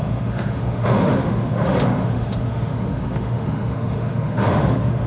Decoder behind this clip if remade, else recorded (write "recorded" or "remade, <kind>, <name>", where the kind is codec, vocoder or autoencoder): remade, autoencoder, DAC-VAE